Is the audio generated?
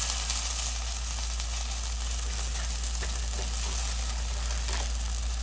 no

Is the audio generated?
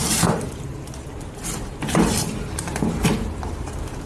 yes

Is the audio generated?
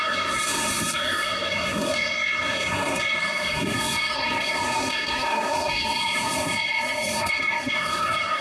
yes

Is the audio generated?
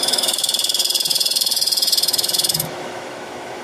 yes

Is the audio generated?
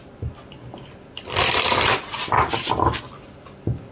no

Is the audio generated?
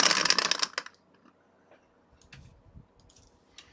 no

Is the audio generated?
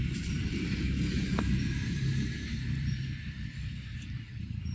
yes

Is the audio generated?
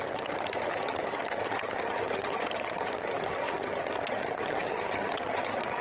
yes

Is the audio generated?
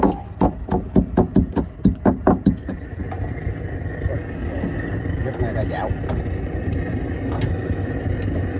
no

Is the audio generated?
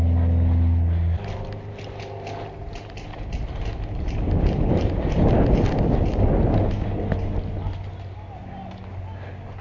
no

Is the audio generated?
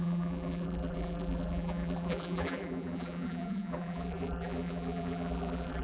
yes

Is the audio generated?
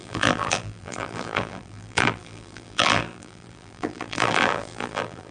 yes